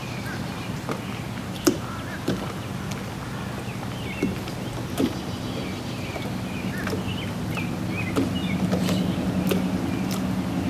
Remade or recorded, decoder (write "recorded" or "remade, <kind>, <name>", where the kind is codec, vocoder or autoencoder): recorded